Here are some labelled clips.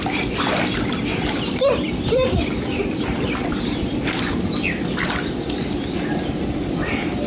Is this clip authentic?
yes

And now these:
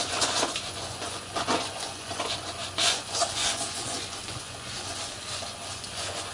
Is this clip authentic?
no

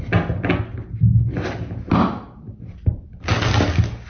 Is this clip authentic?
yes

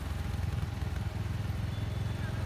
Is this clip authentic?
yes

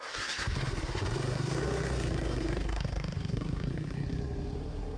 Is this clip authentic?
no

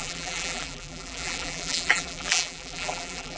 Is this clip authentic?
no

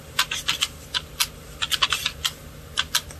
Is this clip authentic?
yes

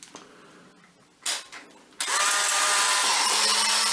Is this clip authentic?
yes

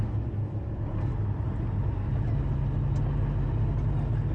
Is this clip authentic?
yes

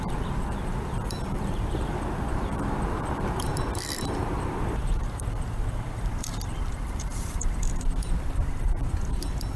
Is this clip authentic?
no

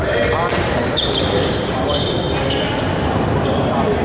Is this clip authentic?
yes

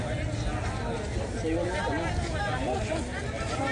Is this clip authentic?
yes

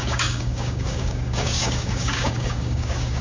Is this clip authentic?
no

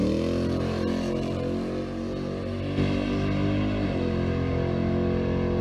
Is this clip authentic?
yes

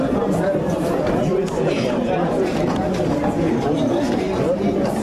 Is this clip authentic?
yes